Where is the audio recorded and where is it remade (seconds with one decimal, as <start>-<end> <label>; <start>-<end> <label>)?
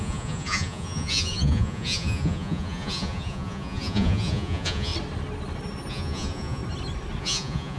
0.0-4.9 remade; 4.9-5.9 recorded; 5.9-6.6 remade; 6.6-7.2 recorded; 7.2-7.8 remade